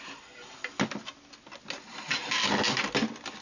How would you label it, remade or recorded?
recorded